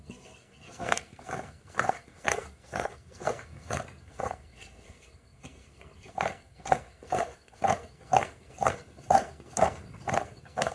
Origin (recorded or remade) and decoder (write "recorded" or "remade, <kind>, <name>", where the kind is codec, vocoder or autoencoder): remade, codec, SNAC